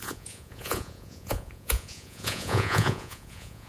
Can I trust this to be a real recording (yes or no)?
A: no